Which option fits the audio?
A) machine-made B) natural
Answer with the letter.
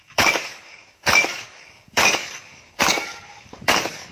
A